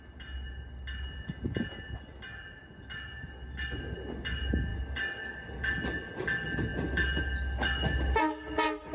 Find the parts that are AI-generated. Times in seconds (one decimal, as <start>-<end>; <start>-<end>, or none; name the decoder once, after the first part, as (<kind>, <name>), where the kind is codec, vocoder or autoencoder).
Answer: none

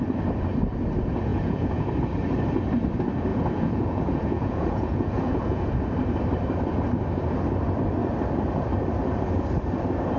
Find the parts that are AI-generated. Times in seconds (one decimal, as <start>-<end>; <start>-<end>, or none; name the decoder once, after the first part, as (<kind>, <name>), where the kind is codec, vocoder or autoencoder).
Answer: 1.3-1.9 (vocoder, Vocos); 3.3-5.7

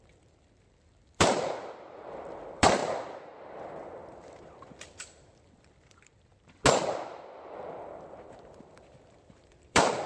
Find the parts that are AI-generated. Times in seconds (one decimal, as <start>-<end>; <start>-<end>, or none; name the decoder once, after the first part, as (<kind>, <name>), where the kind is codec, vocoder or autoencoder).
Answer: 0.0-2.8 (vocoder, BigVGAN v2); 4.4-6.3; 8.7-10.1

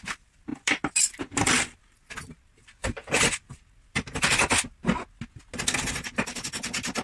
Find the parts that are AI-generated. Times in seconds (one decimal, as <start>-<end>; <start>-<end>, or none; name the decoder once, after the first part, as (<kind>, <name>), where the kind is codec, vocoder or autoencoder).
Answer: 0.5-1.2 (vocoder, BigVGAN v2); 2.8-3.6

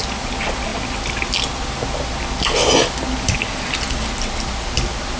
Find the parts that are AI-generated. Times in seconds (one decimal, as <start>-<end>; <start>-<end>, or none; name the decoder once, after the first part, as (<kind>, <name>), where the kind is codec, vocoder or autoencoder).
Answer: none

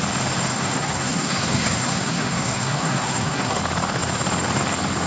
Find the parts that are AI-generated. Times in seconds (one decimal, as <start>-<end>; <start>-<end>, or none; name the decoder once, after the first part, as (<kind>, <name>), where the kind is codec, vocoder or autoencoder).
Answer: 0.5-3.6 (codec, SNAC)